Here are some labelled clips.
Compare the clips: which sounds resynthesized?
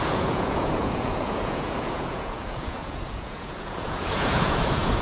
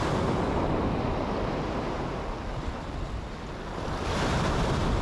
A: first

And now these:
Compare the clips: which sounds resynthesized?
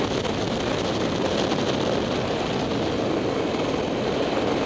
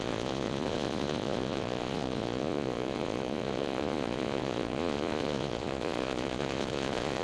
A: second